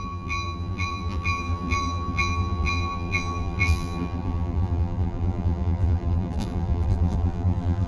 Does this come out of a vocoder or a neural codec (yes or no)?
yes